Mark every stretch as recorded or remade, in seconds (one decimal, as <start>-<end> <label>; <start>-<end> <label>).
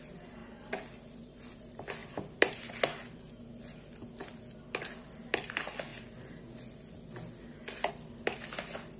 0.0-9.0 recorded